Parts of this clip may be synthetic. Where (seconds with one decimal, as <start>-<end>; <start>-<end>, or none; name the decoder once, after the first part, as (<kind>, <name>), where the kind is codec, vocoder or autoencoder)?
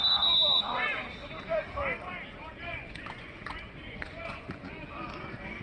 2.8-4.8 (vocoder, Vocos)